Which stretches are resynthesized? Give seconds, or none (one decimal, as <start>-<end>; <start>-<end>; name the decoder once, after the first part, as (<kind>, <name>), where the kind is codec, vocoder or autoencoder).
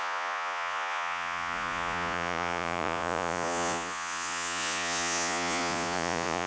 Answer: 0.0-6.5 (vocoder, Vocos)